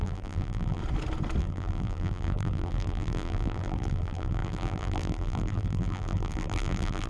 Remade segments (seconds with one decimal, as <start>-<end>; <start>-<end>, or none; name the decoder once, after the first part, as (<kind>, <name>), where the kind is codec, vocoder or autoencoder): 0.0-0.8 (vocoder, BigVGAN v2); 1.4-7.1